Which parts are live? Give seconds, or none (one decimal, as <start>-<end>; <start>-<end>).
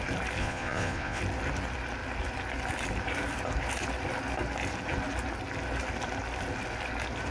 0.0-0.4; 1.2-7.3